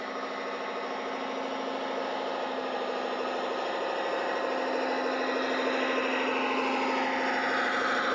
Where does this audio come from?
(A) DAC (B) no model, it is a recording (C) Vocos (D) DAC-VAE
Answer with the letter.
B